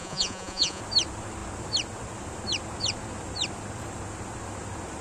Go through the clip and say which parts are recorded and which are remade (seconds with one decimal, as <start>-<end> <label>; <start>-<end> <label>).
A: 0.0-0.8 remade; 0.8-5.0 recorded